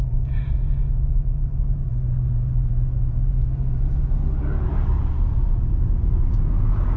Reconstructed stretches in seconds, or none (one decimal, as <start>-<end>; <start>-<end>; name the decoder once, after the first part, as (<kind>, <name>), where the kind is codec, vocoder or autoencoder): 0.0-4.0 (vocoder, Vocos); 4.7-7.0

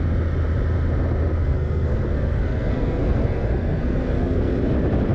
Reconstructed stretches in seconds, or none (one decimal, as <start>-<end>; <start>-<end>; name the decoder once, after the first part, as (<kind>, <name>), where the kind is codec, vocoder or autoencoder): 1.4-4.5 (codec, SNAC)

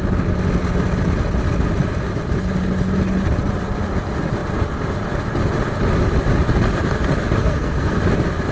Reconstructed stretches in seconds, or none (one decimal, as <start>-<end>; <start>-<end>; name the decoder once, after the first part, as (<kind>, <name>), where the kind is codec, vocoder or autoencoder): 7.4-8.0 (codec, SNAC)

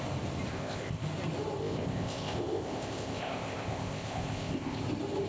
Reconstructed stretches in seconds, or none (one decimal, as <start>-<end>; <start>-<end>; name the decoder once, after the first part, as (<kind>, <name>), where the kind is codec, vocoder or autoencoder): 0.5-1.0 (codec, ZipCodec); 1.6-4.8

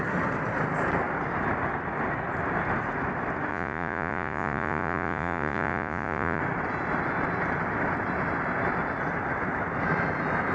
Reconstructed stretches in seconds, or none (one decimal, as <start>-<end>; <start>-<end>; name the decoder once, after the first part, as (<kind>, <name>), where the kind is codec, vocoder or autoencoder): 3.5-6.4 (vocoder, Vocos)

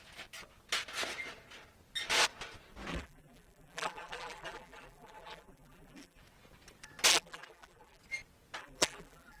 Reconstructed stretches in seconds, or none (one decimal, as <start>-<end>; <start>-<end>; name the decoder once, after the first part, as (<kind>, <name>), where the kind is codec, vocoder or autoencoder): 2.9-6.2 (vocoder, BigVGAN v2); 7.1-8.0; 8.6-9.4

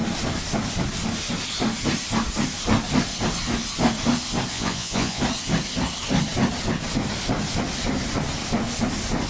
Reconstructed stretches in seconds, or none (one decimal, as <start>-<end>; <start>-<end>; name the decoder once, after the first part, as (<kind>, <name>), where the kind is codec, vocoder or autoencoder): 4.5-5.2 (vocoder, Vocos)

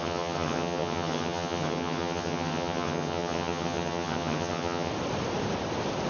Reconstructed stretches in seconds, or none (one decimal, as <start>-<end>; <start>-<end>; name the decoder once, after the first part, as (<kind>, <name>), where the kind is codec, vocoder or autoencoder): 0.0-4.9 (vocoder, HiFi-GAN)